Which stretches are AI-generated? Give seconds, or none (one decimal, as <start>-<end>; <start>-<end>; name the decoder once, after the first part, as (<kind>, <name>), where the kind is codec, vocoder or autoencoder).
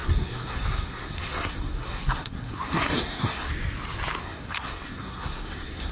0.0-3.5 (codec, SNAC); 4.2-5.9